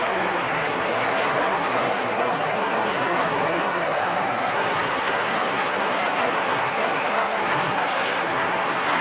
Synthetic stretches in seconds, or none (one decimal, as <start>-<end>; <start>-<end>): 0.0-9.0